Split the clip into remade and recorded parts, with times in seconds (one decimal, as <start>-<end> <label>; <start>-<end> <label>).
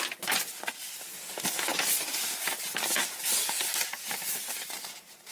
0.0-5.3 recorded